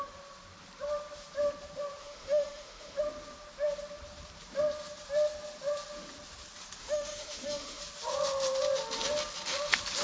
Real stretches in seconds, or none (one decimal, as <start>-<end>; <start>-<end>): 0.0-2.0; 3.0-6.8; 7.8-10.0

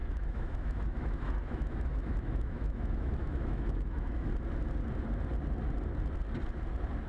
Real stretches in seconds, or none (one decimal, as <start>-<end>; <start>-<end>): 4.3-7.1

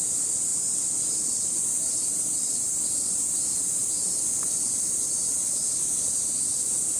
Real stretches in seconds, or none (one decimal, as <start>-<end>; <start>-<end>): 3.8-4.5

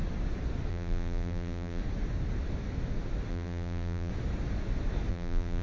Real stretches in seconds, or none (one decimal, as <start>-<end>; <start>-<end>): 0.0-0.7; 1.8-3.3; 4.1-5.1

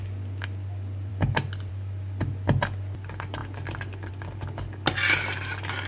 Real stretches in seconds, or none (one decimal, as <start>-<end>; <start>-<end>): 0.0-1.1; 1.7-3.4; 4.1-5.9